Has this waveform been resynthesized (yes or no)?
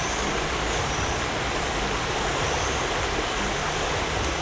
no